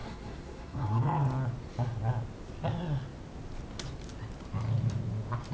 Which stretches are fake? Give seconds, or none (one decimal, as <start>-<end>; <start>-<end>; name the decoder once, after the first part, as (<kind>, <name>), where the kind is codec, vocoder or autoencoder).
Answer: 0.0-1.0 (codec, SNAC)